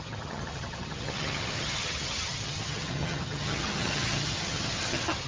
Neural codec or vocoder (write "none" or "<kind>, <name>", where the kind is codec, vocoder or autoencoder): vocoder, HiFi-GAN